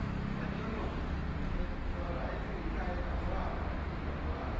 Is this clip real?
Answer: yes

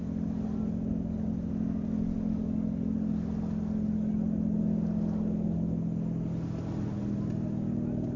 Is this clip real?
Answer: yes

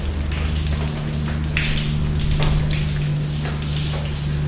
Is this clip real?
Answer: yes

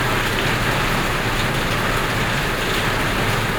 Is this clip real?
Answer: yes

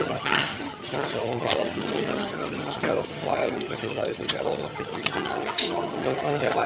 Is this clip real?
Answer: no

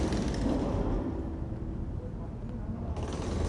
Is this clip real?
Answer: yes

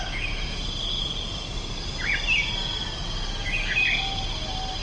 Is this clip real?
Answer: yes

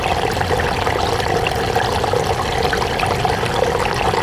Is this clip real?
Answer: yes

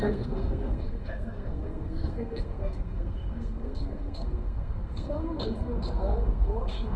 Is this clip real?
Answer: no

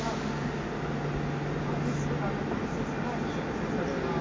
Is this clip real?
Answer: yes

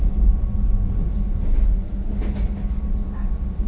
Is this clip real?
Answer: no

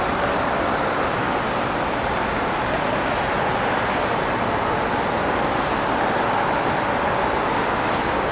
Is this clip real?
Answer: yes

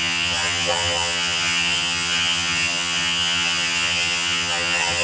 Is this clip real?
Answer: no